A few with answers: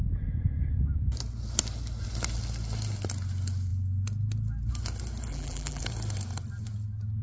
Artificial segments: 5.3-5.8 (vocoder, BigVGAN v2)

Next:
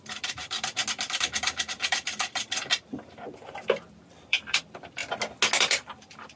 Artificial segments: 0.0-0.8 (vocoder, BigVGAN v2); 1.4-5.0; 5.6-6.4

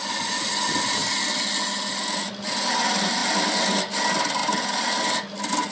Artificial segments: none

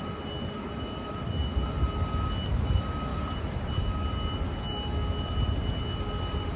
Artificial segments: 3.1-3.8 (vocoder, BigVGAN v2)

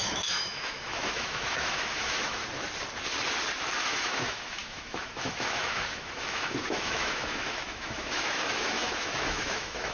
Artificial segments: 0.0-2.4 (autoencoder, DAC-VAE); 3.8-9.9

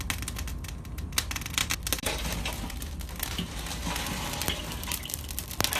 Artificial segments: none

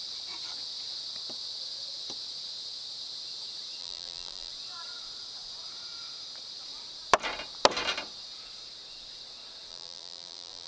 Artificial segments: 3.8-4.5 (vocoder, BigVGAN v2); 9.7-10.7